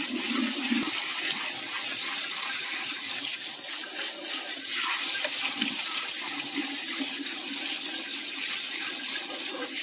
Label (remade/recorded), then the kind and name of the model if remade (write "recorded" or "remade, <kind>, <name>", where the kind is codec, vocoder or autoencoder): recorded